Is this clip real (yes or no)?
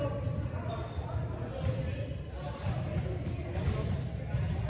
yes